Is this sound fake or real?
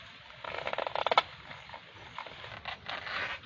real